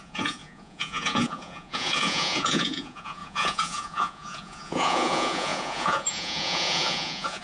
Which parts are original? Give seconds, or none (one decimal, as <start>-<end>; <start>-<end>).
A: none